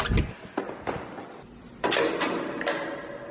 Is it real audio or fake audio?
real